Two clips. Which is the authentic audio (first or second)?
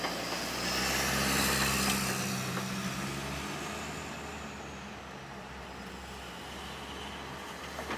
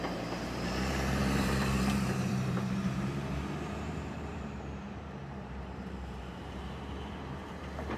first